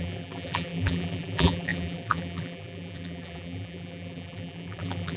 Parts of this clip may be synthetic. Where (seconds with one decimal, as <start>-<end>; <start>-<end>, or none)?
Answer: 0.0-5.2